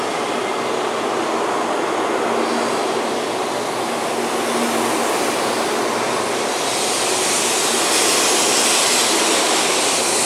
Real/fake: real